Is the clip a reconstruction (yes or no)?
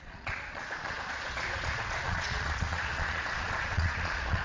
yes